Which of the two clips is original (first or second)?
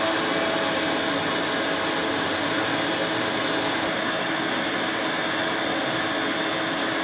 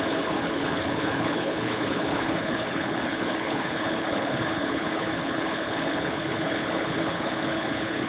first